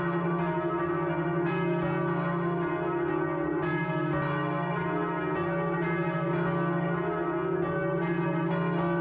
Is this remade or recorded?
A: recorded